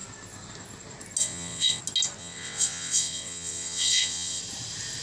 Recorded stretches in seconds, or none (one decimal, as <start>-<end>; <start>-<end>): 0.0-1.2; 1.8-2.2; 4.4-5.0